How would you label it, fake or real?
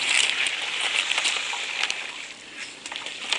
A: real